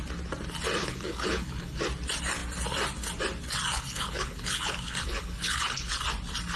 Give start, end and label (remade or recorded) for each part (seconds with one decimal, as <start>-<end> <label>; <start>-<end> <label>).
0.0-0.8 recorded; 0.8-1.8 remade; 1.8-3.7 recorded; 3.7-6.0 remade; 6.0-6.6 recorded